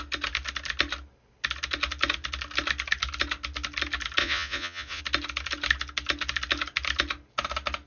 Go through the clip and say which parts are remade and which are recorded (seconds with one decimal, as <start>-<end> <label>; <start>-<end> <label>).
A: 0.0-4.2 recorded; 4.2-5.0 remade; 5.0-7.9 recorded